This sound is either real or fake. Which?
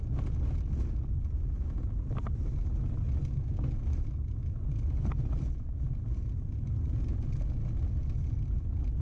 real